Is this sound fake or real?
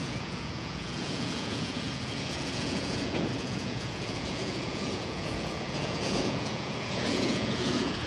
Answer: fake